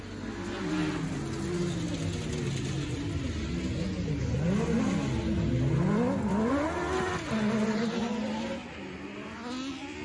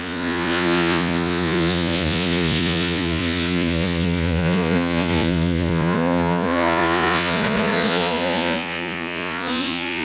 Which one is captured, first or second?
first